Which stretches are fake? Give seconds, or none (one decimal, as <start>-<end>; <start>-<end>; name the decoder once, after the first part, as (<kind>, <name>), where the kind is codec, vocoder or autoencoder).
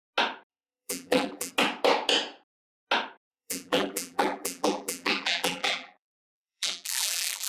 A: 0.5-1.5 (vocoder, BigVGAN v2); 3.3-7.5